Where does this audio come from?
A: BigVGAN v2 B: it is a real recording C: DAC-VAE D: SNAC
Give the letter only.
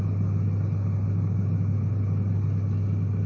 B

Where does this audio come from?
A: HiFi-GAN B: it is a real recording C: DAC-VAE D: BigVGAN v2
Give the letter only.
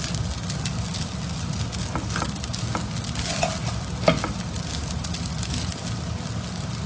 B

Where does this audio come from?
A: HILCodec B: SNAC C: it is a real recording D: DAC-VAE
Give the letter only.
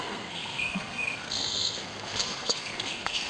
B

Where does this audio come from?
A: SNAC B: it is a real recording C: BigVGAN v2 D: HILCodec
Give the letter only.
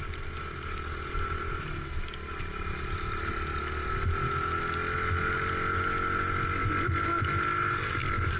B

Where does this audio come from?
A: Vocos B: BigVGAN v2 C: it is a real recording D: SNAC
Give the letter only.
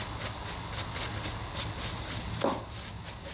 C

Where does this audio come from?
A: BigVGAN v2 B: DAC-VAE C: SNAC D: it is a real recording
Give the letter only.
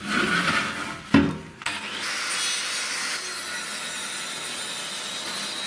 D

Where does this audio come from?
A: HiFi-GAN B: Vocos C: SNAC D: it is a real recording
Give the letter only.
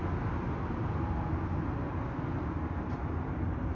D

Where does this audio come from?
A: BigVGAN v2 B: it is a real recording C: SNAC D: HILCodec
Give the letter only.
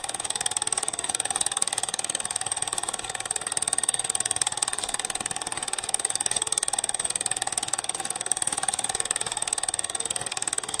C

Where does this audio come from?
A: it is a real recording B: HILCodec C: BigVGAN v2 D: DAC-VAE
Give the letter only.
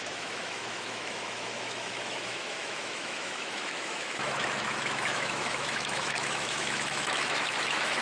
D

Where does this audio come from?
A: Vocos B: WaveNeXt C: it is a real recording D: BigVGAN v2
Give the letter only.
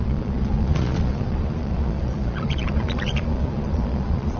A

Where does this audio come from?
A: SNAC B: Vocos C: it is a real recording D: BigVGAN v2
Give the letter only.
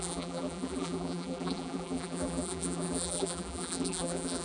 D